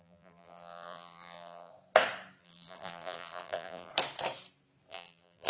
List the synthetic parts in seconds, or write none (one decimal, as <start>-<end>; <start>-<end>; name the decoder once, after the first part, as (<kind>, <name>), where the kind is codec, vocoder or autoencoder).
0.0-1.7 (vocoder, BigVGAN v2); 2.4-3.9; 4.9-5.5